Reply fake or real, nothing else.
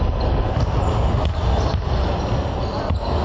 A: real